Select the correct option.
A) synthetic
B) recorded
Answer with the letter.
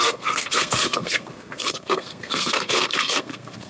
A